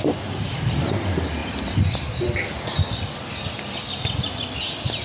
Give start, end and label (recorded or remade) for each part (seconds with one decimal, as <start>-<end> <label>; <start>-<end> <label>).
0.0-5.0 recorded